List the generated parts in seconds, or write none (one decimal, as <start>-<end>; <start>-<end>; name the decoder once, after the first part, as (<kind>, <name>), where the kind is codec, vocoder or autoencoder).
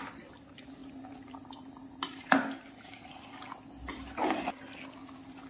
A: none